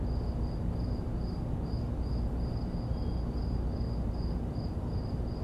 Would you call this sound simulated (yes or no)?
no